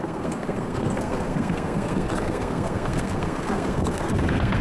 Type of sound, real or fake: fake